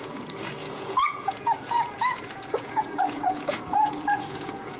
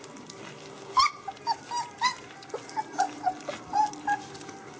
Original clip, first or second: second